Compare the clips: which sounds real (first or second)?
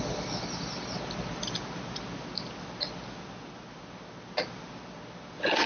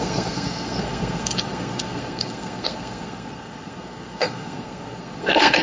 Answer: first